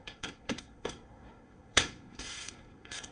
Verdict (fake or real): fake